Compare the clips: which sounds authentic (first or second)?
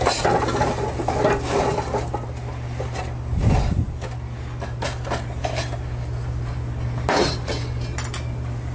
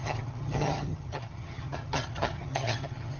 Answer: first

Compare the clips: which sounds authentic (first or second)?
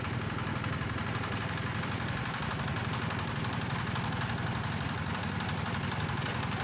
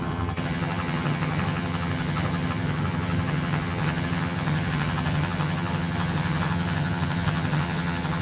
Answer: first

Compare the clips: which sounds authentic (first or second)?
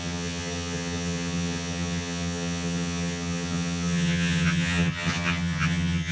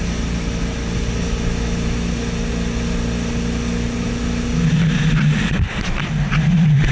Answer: second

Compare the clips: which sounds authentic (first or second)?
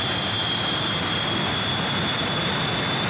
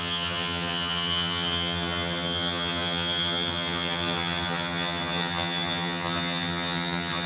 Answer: first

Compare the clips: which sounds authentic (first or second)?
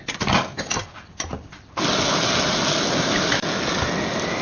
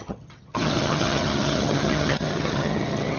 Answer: first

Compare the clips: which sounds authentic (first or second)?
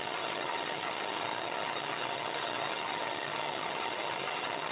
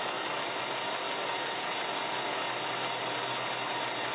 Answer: second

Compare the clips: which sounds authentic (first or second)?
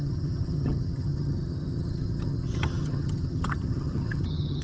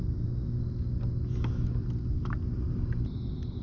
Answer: second